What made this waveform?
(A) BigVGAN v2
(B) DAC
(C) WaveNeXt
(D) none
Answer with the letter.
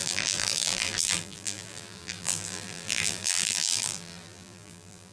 A